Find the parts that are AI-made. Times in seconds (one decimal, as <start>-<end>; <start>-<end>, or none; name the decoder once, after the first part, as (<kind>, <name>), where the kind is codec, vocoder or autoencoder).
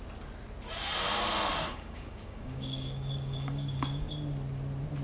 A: 1.5-4.1 (codec, DAC)